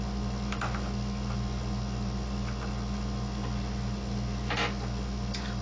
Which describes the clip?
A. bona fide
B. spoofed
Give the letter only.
A